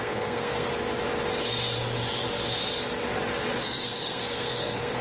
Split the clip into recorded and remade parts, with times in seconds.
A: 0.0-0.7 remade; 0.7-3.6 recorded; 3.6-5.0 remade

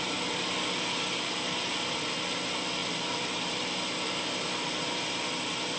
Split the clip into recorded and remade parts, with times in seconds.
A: 0.0-5.8 recorded

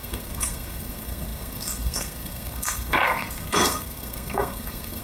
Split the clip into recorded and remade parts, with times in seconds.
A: 0.0-5.0 remade

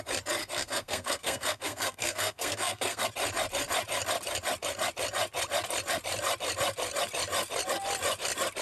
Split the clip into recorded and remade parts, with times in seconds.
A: 0.0-0.4 recorded; 0.4-3.0 remade; 3.0-8.6 recorded

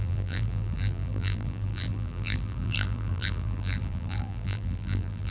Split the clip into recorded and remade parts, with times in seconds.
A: 0.0-5.3 remade

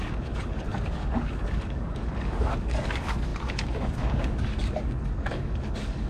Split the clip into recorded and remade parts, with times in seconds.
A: 0.0-6.1 remade